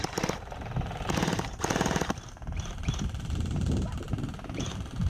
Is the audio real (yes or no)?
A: no